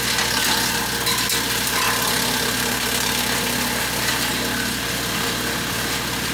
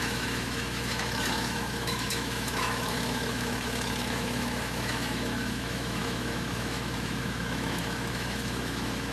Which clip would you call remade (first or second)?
second